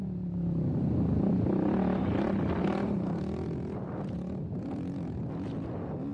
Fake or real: real